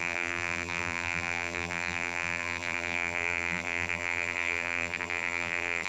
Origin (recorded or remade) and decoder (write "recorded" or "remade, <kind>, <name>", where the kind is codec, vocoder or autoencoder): remade, vocoder, BigVGAN v2